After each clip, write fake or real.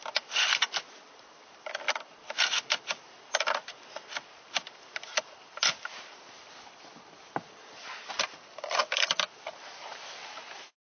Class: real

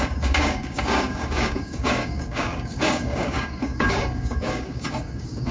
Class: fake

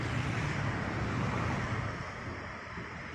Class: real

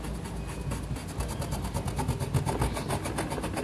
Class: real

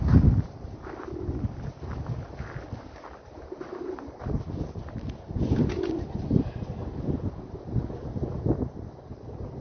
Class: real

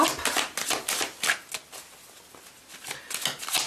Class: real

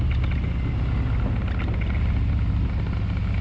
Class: real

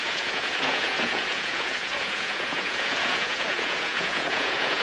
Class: fake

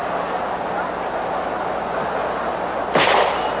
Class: real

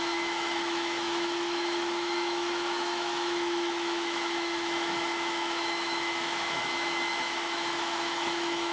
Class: fake